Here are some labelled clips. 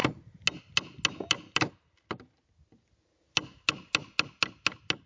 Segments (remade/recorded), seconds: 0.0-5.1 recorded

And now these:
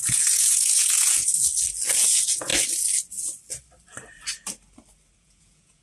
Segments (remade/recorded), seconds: 0.0-1.3 remade; 1.3-2.0 recorded; 2.0-2.5 remade; 2.5-5.2 recorded; 5.2-5.8 remade

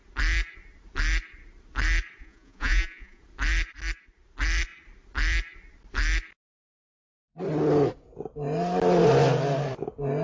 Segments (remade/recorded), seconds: 0.0-2.2 recorded; 2.2-3.2 remade; 3.2-10.2 recorded

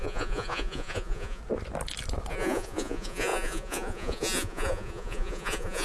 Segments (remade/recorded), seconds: 0.0-1.4 remade; 1.4-2.3 recorded; 2.3-5.8 remade

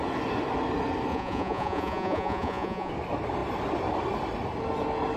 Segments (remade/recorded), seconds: 0.0-1.1 recorded; 1.1-2.9 remade; 2.9-5.2 recorded

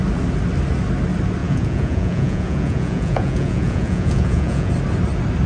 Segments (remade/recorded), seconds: 0.0-1.4 recorded; 1.4-4.7 remade; 4.7-5.5 recorded

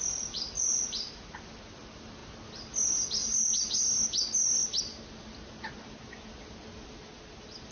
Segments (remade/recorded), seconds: 0.0-7.7 recorded

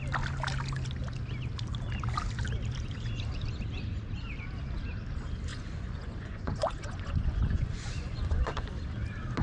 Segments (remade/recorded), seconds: 0.0-5.5 recorded; 5.5-8.7 remade; 8.7-9.4 recorded